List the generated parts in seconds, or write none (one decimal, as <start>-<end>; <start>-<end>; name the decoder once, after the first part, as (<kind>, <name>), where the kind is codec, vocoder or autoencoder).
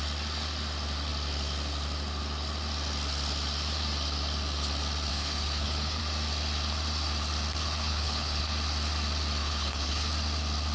5.1-6.0 (codec, HILCodec); 7.6-8.4; 9.4-10.1